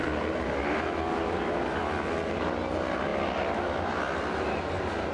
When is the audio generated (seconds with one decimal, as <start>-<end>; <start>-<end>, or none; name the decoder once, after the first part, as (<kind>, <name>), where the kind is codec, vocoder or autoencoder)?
none